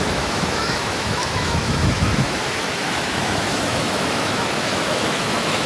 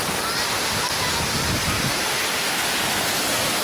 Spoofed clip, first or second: first